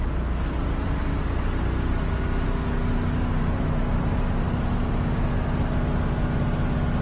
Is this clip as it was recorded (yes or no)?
yes